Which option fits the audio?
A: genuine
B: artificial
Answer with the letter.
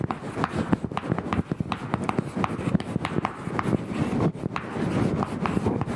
A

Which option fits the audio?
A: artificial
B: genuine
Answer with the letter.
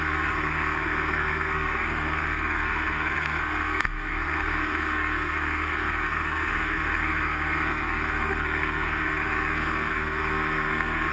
A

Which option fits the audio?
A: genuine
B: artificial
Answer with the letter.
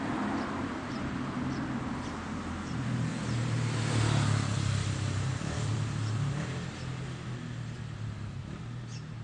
A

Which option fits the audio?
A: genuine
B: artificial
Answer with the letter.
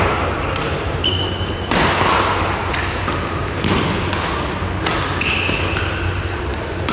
A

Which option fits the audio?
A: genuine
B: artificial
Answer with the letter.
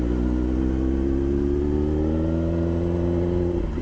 A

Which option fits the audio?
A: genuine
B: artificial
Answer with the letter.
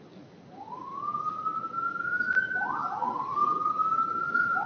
A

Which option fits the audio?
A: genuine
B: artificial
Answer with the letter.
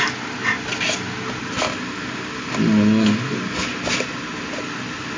A